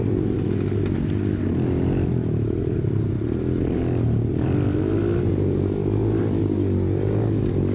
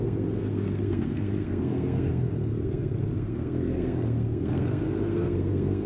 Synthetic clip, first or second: second